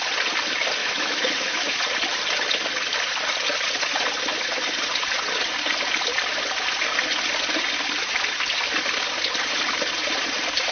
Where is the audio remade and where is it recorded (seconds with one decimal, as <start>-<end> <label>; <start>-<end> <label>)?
0.0-0.8 recorded; 0.8-1.8 remade; 1.8-10.7 recorded